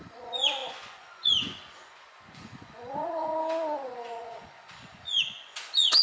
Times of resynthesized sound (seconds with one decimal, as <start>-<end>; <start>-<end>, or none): 0.0-6.0

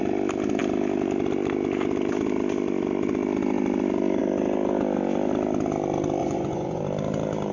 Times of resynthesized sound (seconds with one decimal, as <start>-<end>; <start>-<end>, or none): 6.2-6.8

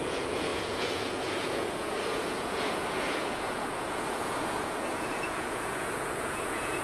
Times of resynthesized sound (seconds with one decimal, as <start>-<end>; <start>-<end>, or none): 0.0-6.8